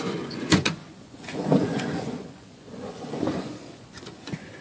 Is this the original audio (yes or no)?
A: no